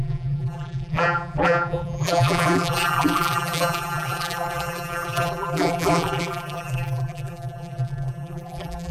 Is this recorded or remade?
remade